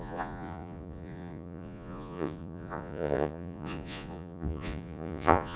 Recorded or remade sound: remade